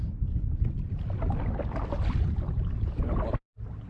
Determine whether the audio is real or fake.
real